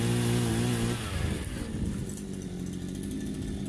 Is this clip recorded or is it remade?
recorded